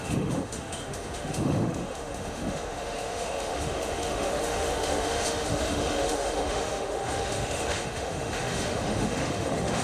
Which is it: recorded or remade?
remade